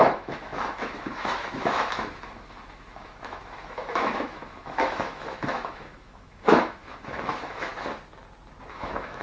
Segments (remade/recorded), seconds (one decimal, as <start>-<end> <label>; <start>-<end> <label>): 0.0-7.7 remade; 7.7-8.7 recorded; 8.7-9.2 remade